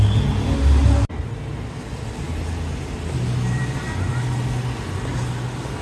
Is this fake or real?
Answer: real